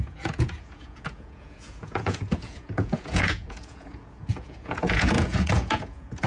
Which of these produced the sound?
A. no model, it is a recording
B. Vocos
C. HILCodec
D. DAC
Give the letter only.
B